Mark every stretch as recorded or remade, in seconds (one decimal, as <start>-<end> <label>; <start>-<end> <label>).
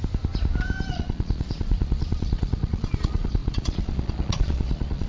0.0-0.9 recorded; 0.9-5.1 remade